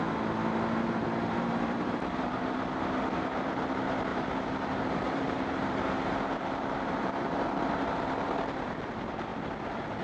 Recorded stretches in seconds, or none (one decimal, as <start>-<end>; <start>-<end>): 0.0-1.3; 2.3-4.1; 8.8-10.0